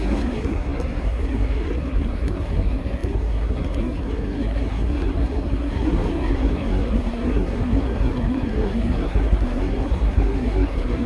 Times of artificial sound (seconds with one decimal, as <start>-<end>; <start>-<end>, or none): 0.0-11.1